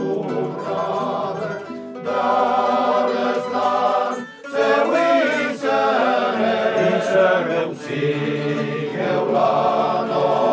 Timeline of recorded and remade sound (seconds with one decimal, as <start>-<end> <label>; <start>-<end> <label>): 0.0-3.2 recorded; 3.2-4.2 remade; 4.2-8.9 recorded; 8.9-9.7 remade; 9.7-10.5 recorded